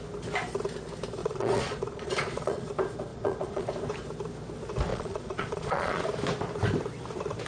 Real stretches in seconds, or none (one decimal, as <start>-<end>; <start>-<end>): 0.0-1.2; 2.7-3.1; 3.7-4.9; 6.0-7.5